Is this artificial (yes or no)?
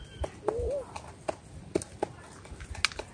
no